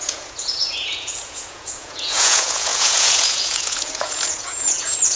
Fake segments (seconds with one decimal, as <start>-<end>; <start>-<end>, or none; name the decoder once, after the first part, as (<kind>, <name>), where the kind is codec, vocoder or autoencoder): 0.0-5.2 (vocoder, Vocos)